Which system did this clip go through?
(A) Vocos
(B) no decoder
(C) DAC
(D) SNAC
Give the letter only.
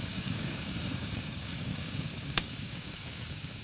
C